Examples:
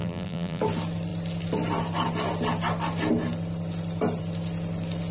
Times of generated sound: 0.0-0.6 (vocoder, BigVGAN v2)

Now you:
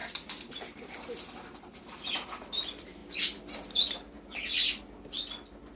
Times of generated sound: 0.0-5.8 (vocoder, BigVGAN v2)

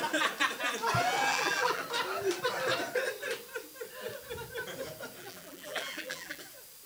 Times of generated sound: 1.3-1.8 (vocoder, BigVGAN v2); 5.2-6.4

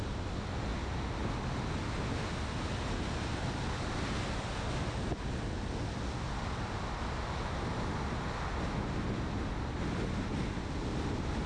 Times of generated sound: none